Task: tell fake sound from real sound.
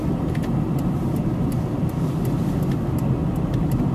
real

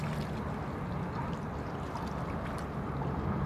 real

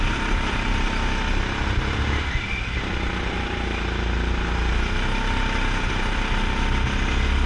real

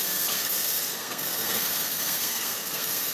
fake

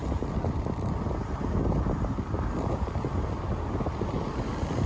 real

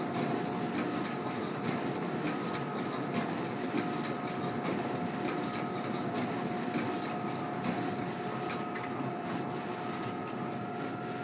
real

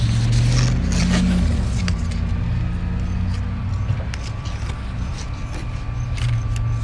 real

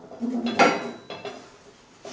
real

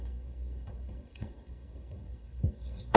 fake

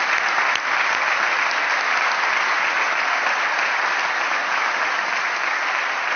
real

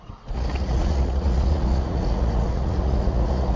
fake